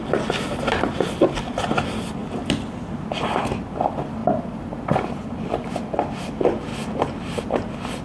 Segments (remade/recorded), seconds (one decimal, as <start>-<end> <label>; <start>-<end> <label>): 0.0-8.0 recorded